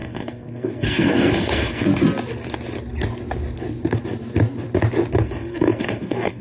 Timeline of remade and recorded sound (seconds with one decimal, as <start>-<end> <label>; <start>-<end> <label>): 0.0-1.9 remade; 1.9-5.2 recorded; 5.2-6.4 remade